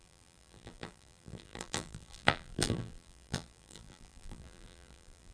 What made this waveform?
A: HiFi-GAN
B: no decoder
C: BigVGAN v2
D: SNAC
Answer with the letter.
C